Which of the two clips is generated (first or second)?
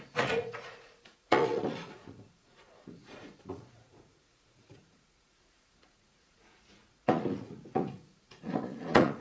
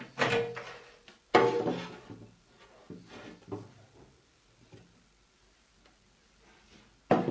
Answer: first